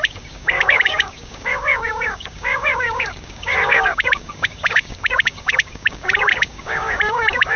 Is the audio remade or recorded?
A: remade